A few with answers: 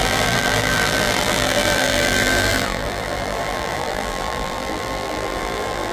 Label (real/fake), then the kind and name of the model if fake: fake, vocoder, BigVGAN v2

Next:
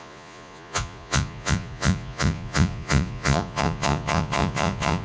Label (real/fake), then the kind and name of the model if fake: fake, vocoder, Vocos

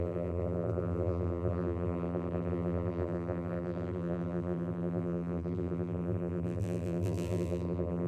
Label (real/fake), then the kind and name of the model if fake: fake, vocoder, BigVGAN v2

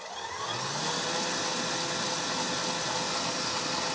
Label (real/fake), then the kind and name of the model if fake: real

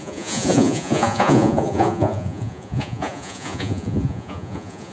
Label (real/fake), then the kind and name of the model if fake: fake, vocoder, Vocos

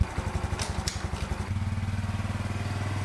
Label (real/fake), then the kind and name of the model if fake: real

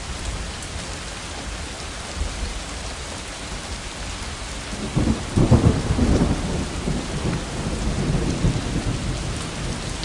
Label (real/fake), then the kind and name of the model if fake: real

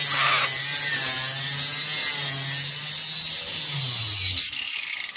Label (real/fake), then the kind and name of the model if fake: real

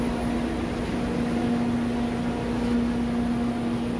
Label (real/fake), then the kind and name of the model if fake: real